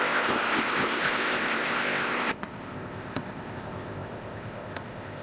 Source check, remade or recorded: remade